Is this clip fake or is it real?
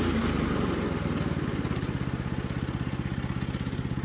real